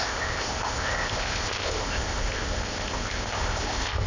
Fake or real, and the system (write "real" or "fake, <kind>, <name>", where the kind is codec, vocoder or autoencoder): fake, codec, ZipCodec